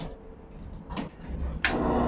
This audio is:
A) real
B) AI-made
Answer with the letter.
A